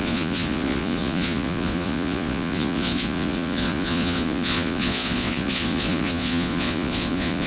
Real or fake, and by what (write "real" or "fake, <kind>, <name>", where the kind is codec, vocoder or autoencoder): fake, vocoder, Vocos